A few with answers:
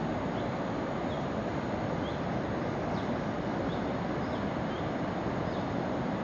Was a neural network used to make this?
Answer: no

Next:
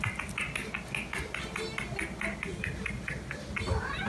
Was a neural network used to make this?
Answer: no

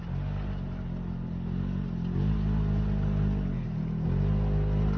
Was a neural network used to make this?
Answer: no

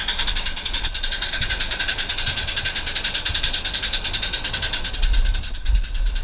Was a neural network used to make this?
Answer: no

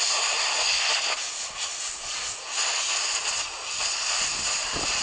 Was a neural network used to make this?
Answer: no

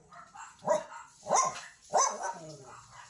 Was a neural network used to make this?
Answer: no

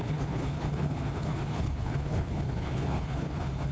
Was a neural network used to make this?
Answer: yes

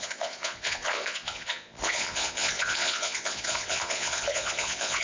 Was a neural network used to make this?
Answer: yes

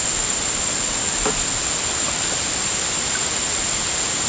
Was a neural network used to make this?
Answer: no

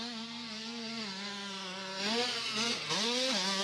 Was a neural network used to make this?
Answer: no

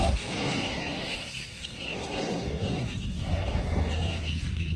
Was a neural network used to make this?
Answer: yes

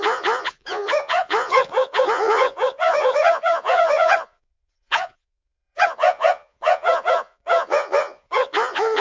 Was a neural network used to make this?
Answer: yes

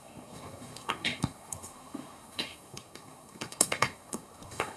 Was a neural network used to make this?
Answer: yes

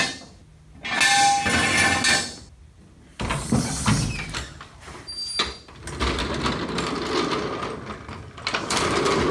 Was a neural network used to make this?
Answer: no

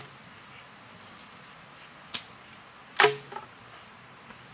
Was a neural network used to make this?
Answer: no